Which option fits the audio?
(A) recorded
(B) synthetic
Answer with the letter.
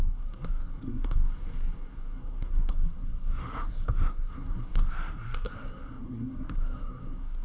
B